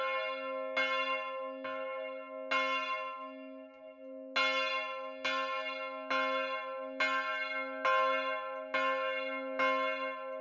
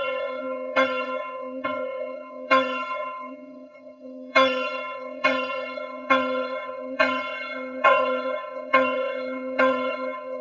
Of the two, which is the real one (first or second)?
first